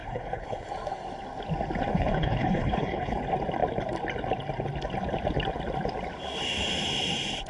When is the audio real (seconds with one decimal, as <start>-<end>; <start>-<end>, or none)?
0.7-1.9; 3.2-7.5